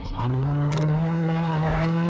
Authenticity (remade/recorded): remade